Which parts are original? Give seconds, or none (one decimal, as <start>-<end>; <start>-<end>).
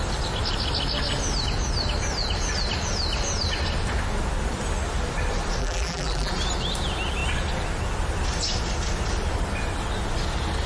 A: 0.0-5.6; 6.3-10.7